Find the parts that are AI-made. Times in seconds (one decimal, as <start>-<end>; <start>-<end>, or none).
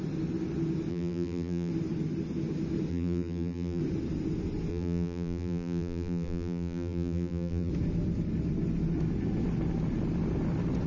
0.9-1.7; 2.9-3.8; 4.7-7.7